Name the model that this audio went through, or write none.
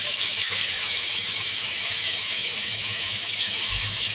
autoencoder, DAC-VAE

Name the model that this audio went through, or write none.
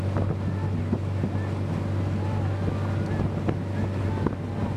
none